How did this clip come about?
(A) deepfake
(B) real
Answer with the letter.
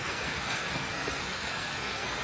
A